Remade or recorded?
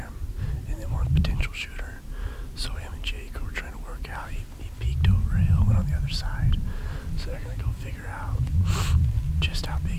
recorded